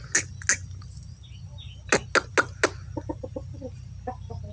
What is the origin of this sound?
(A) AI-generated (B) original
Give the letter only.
B